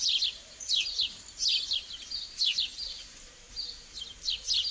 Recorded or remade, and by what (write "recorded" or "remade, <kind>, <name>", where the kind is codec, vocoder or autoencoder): recorded